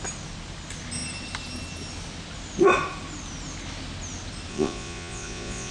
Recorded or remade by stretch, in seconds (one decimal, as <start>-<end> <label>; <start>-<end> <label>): 0.0-4.5 recorded; 4.5-5.7 remade